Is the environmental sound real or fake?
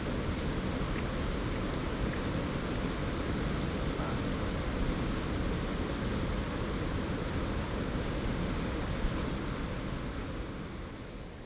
real